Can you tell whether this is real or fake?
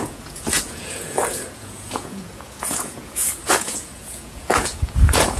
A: fake